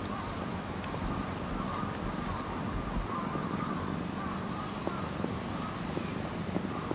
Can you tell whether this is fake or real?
real